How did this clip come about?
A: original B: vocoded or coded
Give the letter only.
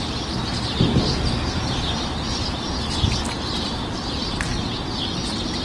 A